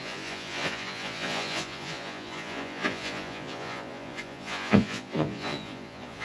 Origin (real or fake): fake